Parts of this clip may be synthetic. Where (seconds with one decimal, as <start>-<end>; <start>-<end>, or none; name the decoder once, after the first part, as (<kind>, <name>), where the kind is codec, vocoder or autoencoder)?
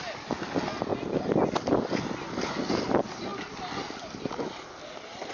none